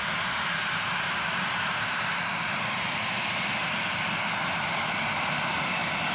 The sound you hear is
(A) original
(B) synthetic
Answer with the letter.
B